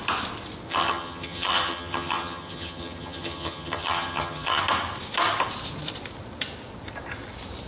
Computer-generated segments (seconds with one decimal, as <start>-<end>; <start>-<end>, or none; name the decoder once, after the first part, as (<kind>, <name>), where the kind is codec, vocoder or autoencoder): 0.7-4.6 (vocoder, HiFi-GAN)

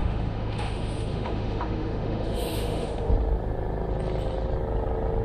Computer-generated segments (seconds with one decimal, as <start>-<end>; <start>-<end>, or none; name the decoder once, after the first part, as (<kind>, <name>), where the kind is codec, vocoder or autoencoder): 0.0-3.1 (autoencoder, DAC-VAE)